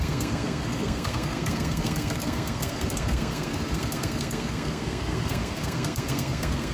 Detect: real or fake fake